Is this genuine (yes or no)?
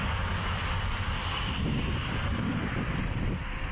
no